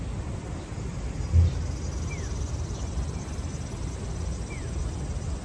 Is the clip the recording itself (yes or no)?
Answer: yes